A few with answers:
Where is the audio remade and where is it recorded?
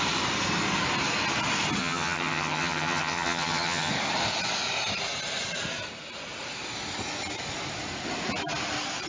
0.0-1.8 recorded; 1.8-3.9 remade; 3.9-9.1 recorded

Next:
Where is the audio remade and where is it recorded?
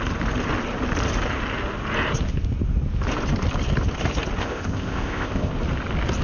0.0-4.4 recorded; 4.4-5.5 remade; 5.5-6.2 recorded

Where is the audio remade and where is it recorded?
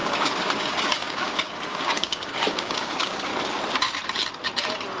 0.0-3.3 remade; 3.3-5.0 recorded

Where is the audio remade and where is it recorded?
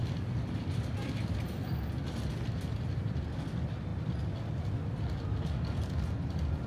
0.0-6.7 recorded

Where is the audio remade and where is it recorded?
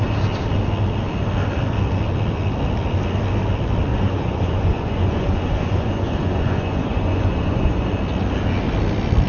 0.0-3.9 recorded; 3.9-8.0 remade; 8.0-9.3 recorded